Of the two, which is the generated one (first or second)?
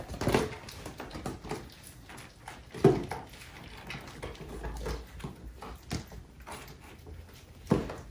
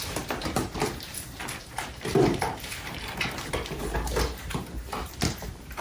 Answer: second